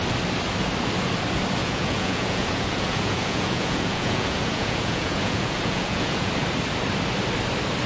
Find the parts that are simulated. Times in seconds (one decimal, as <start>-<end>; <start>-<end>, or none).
1.6-6.3